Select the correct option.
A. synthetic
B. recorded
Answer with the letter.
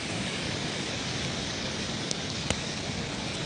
A